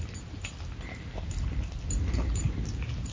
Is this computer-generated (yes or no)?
no